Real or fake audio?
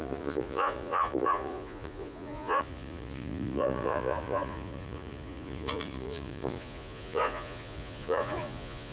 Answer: fake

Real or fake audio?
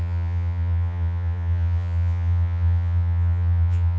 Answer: fake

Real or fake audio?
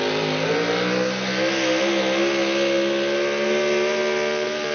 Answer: real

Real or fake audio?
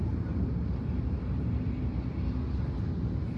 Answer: real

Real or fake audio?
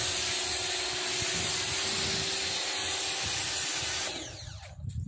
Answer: real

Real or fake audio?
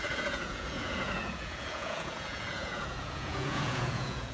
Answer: fake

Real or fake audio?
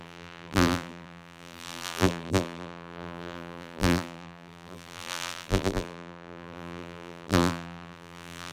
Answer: fake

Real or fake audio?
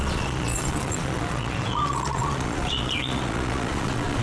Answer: fake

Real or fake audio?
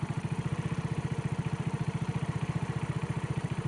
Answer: fake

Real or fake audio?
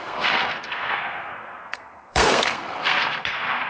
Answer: fake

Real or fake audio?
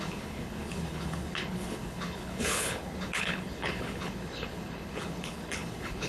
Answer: fake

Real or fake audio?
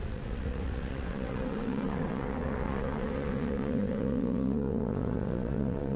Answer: fake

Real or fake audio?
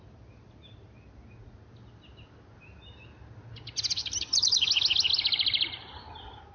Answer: real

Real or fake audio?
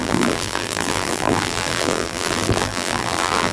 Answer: fake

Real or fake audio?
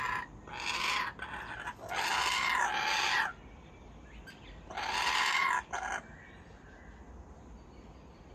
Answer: real